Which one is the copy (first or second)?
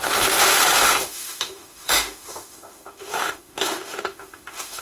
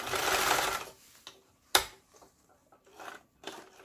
first